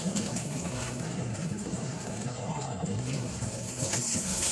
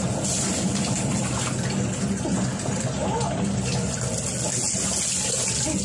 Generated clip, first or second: first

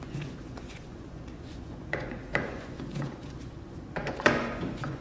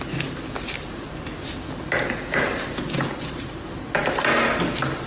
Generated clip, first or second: first